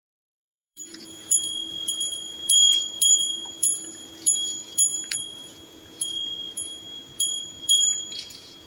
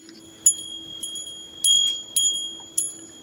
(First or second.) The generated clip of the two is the first